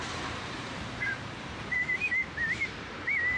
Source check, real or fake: fake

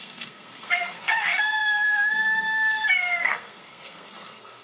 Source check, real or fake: fake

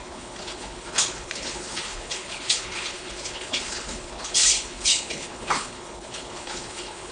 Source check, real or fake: fake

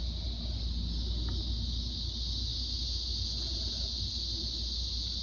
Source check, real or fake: real